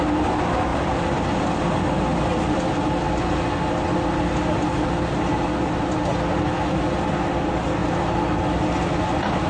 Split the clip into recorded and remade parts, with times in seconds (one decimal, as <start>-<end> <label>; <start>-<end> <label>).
0.0-9.5 recorded